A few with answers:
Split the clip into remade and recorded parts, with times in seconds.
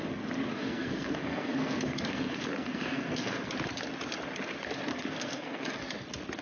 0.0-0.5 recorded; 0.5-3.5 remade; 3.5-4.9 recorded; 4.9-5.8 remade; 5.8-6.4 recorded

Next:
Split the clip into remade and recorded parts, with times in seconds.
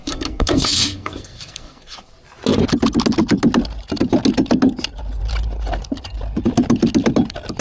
0.0-2.1 remade; 2.1-7.6 recorded